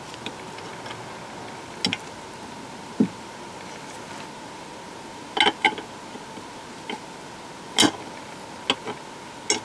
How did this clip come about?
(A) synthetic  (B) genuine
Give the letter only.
B